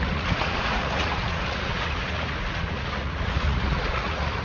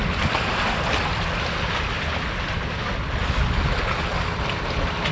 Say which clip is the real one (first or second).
second